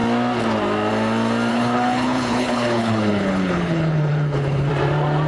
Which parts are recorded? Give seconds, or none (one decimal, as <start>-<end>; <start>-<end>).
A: 0.0-1.5; 4.7-5.3